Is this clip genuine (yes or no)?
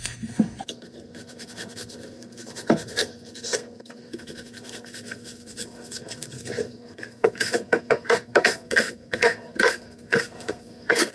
no